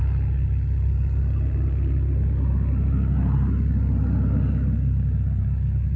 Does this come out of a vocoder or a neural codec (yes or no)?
no